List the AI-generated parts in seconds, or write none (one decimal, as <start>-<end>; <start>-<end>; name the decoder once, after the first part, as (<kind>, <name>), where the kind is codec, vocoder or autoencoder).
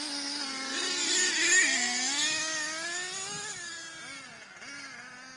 none